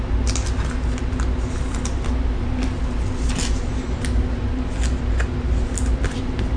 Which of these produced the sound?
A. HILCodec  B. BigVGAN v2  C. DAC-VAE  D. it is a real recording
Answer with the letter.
D